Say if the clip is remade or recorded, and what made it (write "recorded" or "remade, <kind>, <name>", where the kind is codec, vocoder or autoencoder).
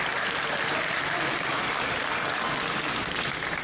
recorded